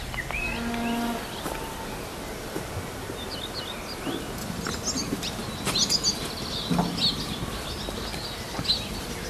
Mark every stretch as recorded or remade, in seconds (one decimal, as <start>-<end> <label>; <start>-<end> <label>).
0.0-9.3 recorded